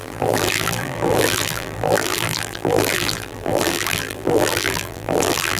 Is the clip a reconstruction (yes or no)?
yes